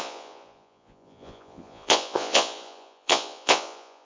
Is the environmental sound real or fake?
fake